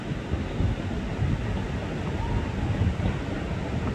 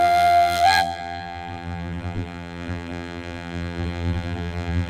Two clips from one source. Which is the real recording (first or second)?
first